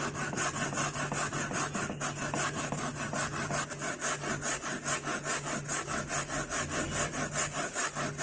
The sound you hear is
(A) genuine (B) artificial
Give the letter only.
A